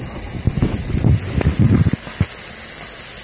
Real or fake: real